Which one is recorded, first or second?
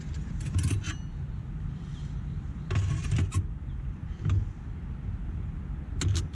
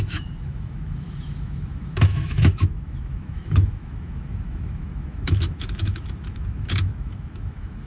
first